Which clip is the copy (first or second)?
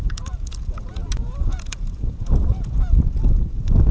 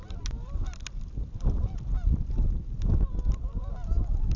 first